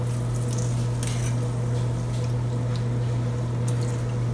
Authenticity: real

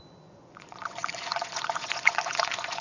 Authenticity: fake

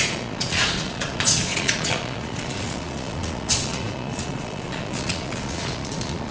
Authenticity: fake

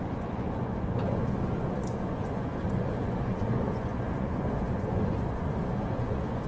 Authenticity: fake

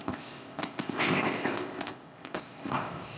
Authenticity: fake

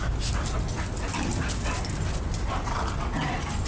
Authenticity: real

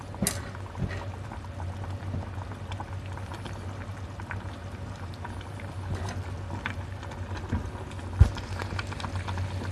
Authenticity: real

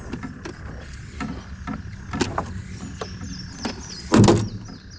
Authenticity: real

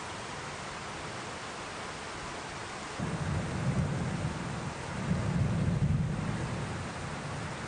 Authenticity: real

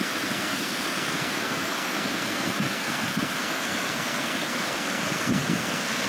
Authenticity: fake